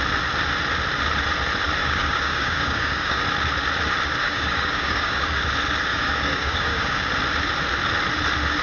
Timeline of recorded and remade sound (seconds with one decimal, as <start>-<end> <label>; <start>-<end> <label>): 0.0-1.8 recorded; 1.8-3.2 remade; 3.2-4.2 recorded; 4.2-5.4 remade; 5.4-5.9 recorded; 5.9-7.1 remade; 7.1-8.6 recorded